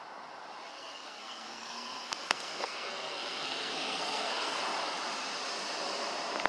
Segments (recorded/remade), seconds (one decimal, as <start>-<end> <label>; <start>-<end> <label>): 0.0-0.7 recorded; 0.7-4.6 remade; 4.6-6.5 recorded